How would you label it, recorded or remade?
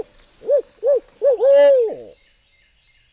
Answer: recorded